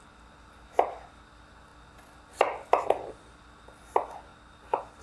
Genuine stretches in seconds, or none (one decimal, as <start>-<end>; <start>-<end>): 0.0-5.0